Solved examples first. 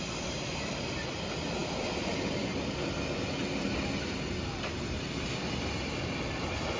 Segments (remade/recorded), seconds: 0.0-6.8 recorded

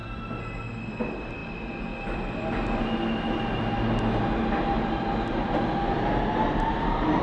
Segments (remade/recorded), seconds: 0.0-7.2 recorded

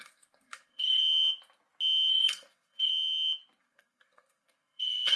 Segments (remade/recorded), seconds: 0.0-1.0 remade; 1.0-2.1 recorded; 2.1-2.9 remade; 2.9-3.6 recorded; 3.6-5.2 remade

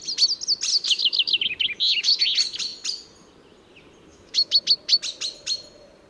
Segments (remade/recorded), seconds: 0.0-0.7 recorded; 0.7-2.2 remade; 2.2-4.1 recorded; 4.1-4.6 remade; 4.6-6.1 recorded

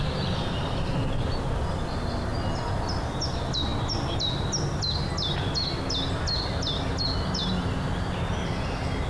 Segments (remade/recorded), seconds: 0.0-9.1 recorded

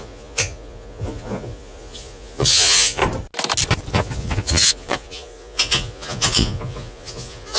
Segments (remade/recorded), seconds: 0.0-3.0 remade; 3.0-3.9 recorded; 3.9-7.6 remade